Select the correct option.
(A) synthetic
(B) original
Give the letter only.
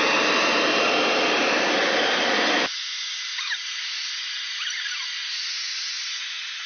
B